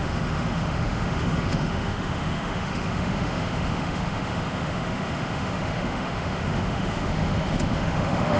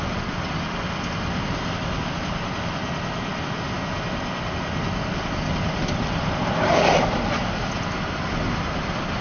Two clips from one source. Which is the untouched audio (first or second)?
second